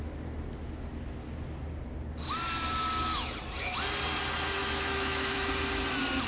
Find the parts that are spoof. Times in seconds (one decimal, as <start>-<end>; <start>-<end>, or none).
4.6-5.5

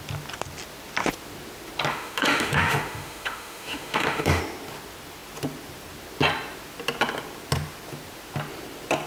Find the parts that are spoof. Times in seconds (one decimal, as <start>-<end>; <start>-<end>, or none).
1.9-4.4